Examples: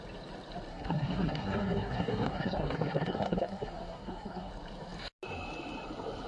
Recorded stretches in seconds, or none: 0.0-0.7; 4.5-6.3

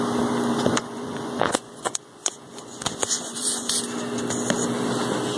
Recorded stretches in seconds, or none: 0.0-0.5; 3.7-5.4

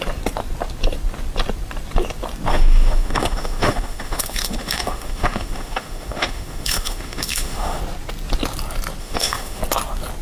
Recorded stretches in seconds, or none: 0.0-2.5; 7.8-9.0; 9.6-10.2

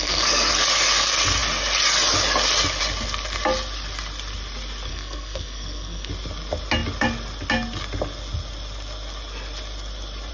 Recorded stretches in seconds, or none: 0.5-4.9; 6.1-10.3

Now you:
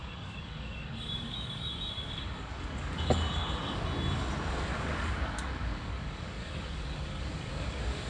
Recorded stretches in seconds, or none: 3.8-4.7

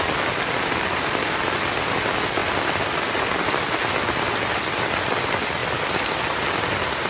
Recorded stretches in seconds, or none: 0.0-7.1

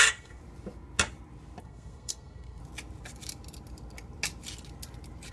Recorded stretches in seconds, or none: 0.4-1.6; 2.6-5.3

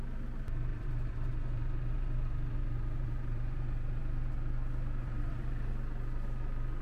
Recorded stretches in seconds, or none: 0.0-0.7; 4.0-5.0; 5.7-6.8